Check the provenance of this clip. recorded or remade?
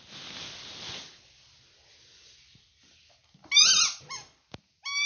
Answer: recorded